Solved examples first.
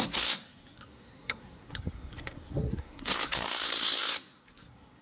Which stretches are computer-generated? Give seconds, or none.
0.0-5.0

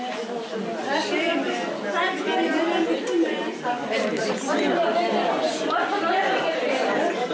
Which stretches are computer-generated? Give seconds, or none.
none

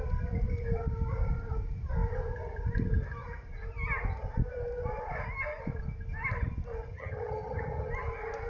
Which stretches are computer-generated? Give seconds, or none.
6.9-7.9

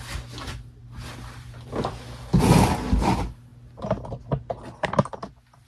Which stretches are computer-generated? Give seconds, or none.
none

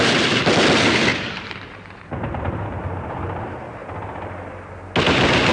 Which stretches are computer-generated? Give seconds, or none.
1.1-2.8

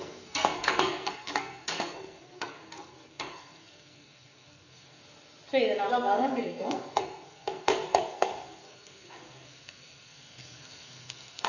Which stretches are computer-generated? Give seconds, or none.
0.0-5.0; 5.9-11.5